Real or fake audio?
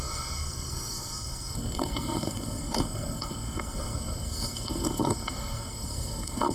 fake